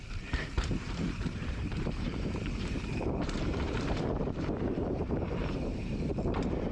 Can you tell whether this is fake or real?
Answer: fake